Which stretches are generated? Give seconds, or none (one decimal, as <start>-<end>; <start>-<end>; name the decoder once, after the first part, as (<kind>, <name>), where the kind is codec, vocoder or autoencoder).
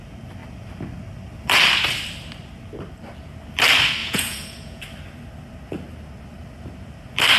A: 4.0-4.8 (vocoder, Vocos)